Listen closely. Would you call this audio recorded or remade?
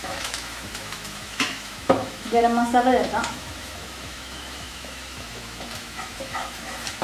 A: remade